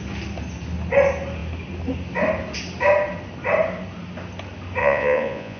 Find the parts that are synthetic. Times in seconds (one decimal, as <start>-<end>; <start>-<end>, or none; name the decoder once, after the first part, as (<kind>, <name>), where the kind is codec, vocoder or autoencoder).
4.8-5.6 (vocoder, Vocos)